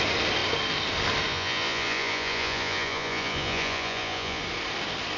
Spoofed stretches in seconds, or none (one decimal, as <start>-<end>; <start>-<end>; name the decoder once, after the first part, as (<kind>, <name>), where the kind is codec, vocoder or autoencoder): 1.3-4.4 (vocoder, Vocos)